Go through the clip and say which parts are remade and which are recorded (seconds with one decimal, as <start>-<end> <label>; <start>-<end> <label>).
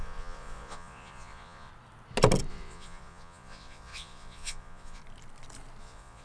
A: 0.0-1.7 remade; 1.7-2.5 recorded; 2.5-5.0 remade; 5.0-5.8 recorded; 5.8-6.2 remade